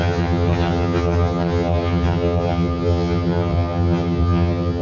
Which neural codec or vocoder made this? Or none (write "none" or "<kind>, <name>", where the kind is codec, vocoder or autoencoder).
vocoder, HiFi-GAN